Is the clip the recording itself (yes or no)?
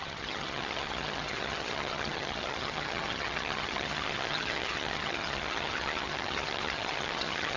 no